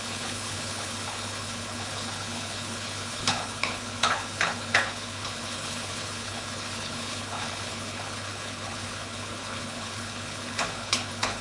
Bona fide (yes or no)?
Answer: no